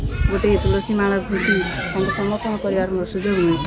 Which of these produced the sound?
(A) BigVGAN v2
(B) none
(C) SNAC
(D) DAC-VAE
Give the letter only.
B